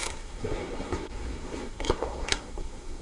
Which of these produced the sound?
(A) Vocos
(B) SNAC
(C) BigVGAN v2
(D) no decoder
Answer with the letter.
B